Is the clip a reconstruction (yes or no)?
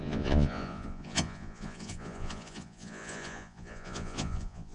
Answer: yes